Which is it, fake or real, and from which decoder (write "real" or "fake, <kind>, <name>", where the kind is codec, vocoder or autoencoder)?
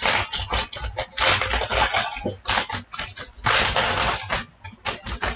real